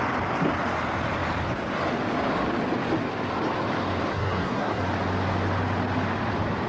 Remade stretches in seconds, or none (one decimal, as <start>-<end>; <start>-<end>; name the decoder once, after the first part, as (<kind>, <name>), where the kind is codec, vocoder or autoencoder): 4.1-4.8 (codec, SNAC)